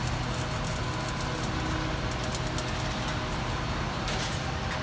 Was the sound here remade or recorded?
recorded